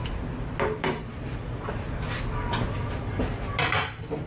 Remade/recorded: recorded